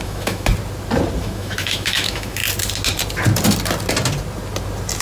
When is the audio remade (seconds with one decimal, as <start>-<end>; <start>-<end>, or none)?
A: 0.0-0.5; 1.2-2.4